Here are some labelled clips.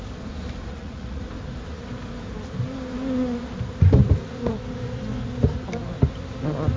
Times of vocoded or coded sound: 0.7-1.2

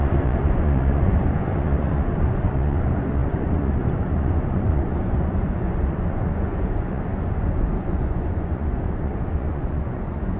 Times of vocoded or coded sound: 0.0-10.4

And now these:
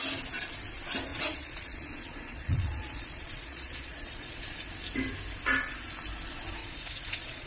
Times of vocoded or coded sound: 1.1-4.4; 6.6-7.5

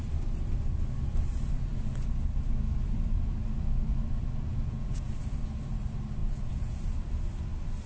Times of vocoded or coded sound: 4.5-5.1; 6.2-6.8